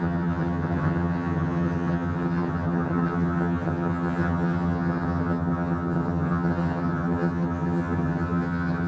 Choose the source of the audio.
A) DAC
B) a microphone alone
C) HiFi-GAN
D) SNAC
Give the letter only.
C